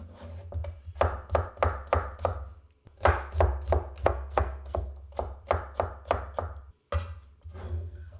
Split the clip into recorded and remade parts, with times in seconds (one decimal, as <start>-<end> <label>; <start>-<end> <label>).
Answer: 0.0-4.0 recorded; 4.0-4.9 remade; 4.9-7.6 recorded; 7.6-8.2 remade